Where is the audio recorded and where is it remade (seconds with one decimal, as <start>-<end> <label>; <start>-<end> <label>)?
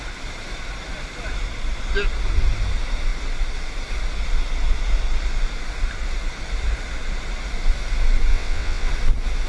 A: 0.0-8.3 recorded; 8.3-8.9 remade; 8.9-9.5 recorded